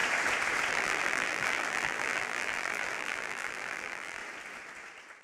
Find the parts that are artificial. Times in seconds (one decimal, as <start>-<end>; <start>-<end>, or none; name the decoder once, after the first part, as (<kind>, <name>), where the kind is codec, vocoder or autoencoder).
0.7-4.2 (vocoder, BigVGAN v2)